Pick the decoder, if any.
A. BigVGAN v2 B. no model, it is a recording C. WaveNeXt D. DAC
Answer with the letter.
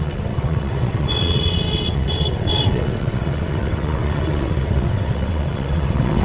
C